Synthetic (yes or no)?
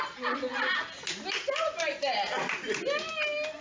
no